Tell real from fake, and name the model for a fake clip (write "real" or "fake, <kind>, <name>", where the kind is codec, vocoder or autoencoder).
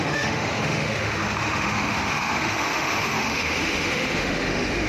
fake, autoencoder, DAC-VAE